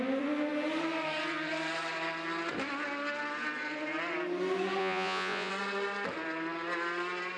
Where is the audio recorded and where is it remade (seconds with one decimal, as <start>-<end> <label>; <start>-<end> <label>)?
0.0-4.8 recorded; 4.8-5.5 remade; 5.5-7.4 recorded